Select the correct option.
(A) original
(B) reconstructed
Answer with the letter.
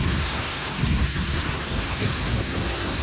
B